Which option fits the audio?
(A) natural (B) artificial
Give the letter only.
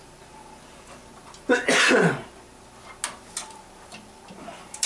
A